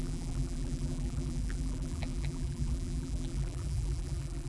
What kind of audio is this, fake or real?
fake